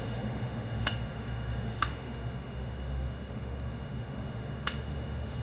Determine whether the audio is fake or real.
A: fake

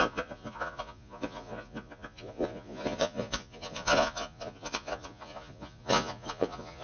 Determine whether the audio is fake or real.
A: fake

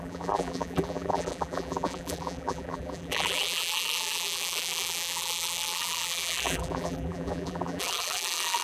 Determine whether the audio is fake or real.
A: fake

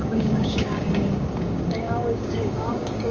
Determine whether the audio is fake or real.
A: fake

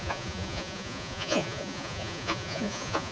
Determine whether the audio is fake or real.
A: fake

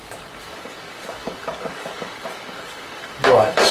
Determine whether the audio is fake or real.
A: fake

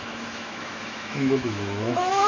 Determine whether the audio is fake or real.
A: fake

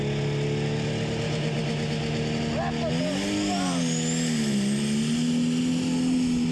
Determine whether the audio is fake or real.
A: real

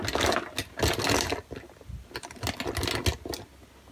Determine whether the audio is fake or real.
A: real